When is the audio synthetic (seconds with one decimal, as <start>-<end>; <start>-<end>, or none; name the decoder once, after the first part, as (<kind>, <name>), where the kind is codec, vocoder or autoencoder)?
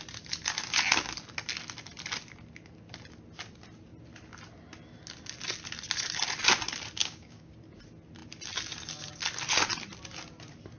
7.0-7.5 (codec, DAC)